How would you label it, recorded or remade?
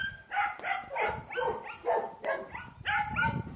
recorded